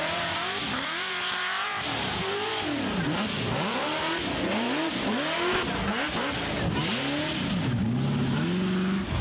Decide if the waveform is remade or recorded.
recorded